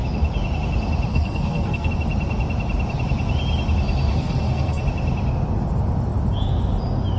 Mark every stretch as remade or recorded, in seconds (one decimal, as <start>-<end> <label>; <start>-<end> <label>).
0.0-1.1 recorded; 1.1-1.9 remade; 1.9-4.1 recorded; 4.1-4.8 remade; 4.8-7.2 recorded